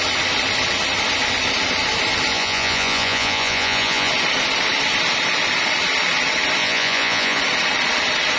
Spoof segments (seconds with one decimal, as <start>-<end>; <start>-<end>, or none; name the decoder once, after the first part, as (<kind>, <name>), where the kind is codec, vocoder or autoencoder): 2.3-4.1 (vocoder, Vocos); 6.6-7.4